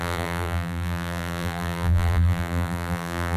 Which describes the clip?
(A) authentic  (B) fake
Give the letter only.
B